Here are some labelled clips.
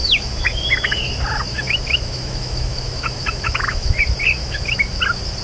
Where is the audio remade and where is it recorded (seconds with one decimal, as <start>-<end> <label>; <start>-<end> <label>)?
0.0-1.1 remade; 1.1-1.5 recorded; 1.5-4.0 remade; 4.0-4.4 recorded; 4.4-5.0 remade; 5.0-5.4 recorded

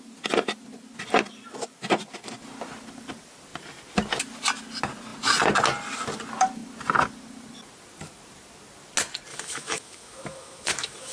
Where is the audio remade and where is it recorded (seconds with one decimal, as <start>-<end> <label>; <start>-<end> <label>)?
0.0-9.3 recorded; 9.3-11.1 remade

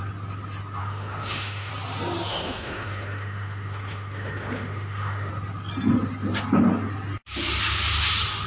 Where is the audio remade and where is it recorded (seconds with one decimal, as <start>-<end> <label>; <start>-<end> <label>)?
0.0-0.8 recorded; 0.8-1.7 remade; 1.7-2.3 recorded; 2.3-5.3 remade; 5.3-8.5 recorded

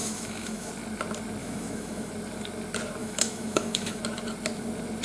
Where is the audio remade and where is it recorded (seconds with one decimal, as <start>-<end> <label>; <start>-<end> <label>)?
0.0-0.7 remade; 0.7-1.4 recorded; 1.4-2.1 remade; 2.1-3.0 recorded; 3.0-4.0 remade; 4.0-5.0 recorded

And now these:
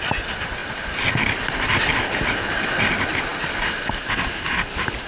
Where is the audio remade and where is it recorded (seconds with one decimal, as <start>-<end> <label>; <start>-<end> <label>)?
0.0-5.1 recorded

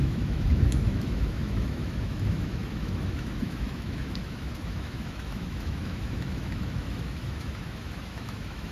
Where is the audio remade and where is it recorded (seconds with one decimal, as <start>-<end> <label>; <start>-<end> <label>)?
0.0-8.7 remade